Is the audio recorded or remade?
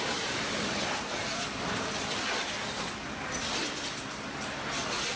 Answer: recorded